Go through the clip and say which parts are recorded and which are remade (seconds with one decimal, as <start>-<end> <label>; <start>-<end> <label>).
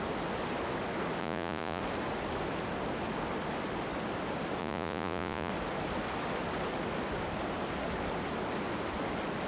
0.0-1.2 recorded; 1.2-1.8 remade; 1.8-4.6 recorded; 4.6-5.5 remade; 5.5-9.5 recorded